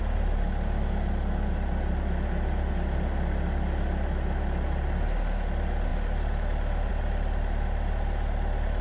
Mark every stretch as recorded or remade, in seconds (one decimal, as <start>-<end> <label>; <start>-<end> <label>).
0.0-8.8 recorded